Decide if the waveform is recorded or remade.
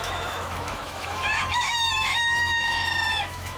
remade